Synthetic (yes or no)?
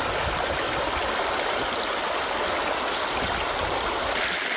no